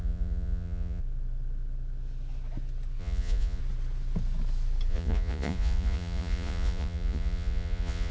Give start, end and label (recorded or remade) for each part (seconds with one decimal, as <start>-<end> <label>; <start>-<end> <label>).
0.0-1.0 remade; 1.0-3.0 recorded; 3.0-3.6 remade; 3.6-4.9 recorded; 4.9-8.1 remade